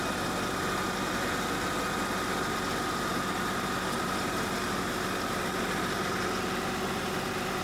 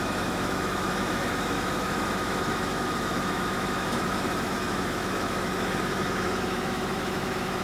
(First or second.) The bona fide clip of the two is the first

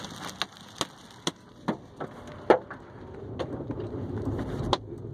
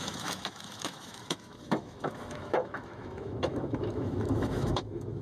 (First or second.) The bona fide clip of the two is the first